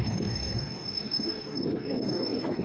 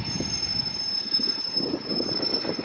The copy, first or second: first